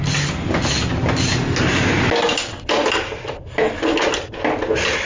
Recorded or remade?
recorded